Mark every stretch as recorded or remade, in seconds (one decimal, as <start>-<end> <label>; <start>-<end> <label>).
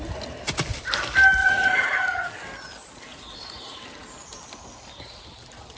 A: 0.0-1.4 recorded; 1.4-2.3 remade; 2.3-3.1 recorded; 3.1-3.8 remade; 3.8-5.8 recorded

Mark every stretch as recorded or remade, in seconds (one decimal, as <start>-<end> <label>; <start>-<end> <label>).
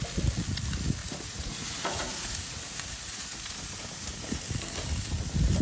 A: 0.0-1.0 recorded; 1.0-4.4 remade; 4.4-5.6 recorded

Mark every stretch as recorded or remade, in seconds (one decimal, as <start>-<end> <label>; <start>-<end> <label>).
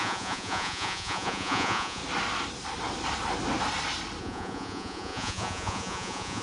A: 0.0-2.0 remade; 2.0-4.2 recorded; 4.2-6.4 remade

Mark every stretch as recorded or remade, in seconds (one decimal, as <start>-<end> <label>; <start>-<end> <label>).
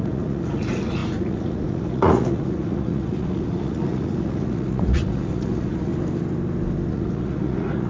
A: 0.0-5.9 remade; 5.9-6.9 recorded; 6.9-7.9 remade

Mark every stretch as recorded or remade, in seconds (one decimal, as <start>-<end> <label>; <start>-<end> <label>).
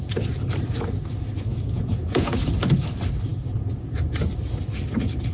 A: 0.0-1.5 recorded; 1.5-2.5 remade; 2.5-5.3 recorded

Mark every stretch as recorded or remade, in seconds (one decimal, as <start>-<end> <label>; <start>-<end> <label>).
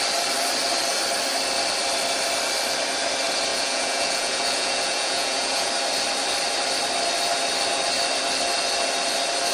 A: 0.0-3.5 recorded; 3.5-5.7 remade; 5.7-9.5 recorded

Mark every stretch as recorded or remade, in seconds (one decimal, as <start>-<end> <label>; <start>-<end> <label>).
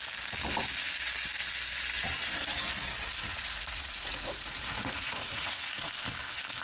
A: 0.0-3.2 recorded; 3.2-5.9 remade; 5.9-6.6 recorded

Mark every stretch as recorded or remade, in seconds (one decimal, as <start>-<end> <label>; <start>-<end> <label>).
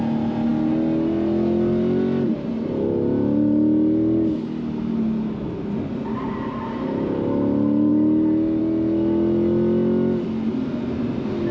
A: 0.0-11.5 recorded